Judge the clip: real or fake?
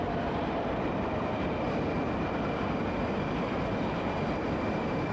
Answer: fake